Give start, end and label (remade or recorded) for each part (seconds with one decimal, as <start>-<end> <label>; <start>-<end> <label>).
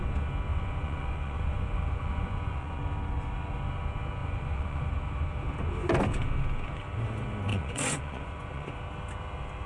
0.0-0.5 recorded; 0.5-2.8 remade; 2.8-4.2 recorded; 4.2-4.9 remade; 4.9-7.5 recorded; 7.5-8.8 remade; 8.8-9.7 recorded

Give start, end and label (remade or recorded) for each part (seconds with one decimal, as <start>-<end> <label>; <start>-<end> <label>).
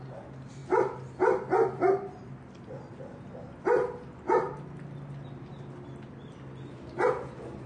0.0-7.7 recorded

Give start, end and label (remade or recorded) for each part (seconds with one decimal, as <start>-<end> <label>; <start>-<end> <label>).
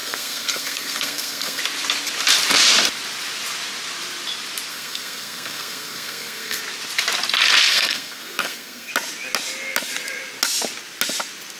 0.0-1.6 remade; 1.6-4.7 recorded; 4.7-6.6 remade; 6.6-7.7 recorded; 7.7-8.9 remade; 8.9-11.6 recorded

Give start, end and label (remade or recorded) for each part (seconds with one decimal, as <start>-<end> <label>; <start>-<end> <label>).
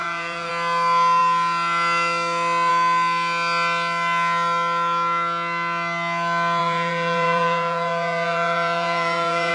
0.0-0.5 remade; 0.5-6.6 recorded; 6.6-9.5 remade